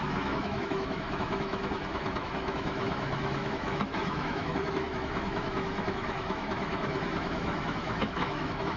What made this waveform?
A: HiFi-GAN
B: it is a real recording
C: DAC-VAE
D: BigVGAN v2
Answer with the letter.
C